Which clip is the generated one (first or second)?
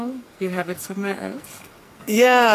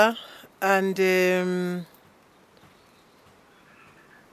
first